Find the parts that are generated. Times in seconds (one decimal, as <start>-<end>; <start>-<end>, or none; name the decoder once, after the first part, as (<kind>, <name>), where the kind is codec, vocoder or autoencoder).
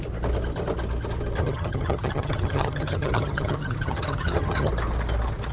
1.4-4.7 (vocoder, HiFi-GAN)